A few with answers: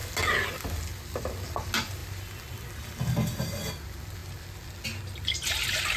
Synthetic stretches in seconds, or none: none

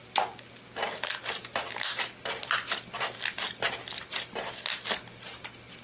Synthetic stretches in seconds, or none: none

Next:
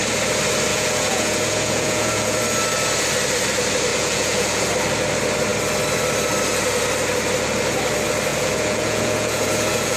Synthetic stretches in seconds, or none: 0.7-2.4 (vocoder, Vocos); 3.9-4.7; 8.3-10.0